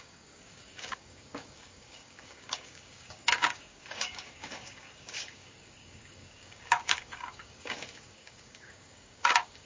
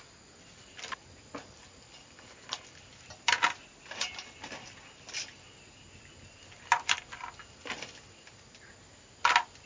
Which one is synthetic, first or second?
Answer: first